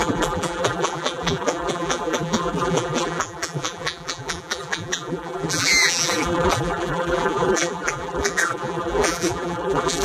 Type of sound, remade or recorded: remade